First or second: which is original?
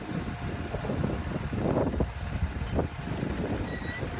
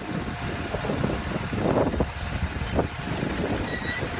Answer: first